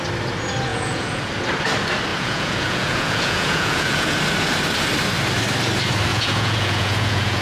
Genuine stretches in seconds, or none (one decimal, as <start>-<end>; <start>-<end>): 0.0-0.7; 1.3-2.1; 4.2-6.1